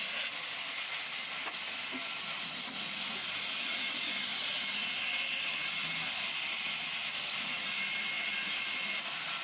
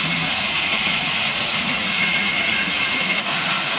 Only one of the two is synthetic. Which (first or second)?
second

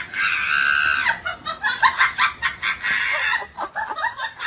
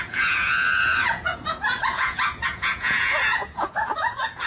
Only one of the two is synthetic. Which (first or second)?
second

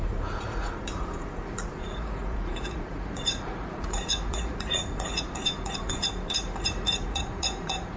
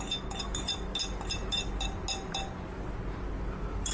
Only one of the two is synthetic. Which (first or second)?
first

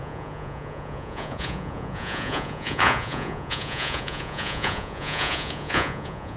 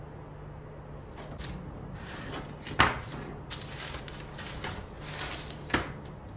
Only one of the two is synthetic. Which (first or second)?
first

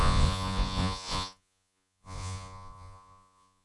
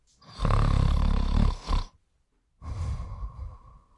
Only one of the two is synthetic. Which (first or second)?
first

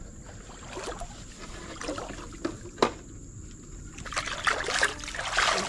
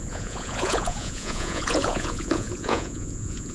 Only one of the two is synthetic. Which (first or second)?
second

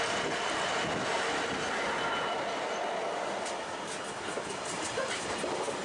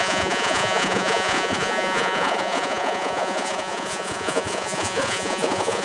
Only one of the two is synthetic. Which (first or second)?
second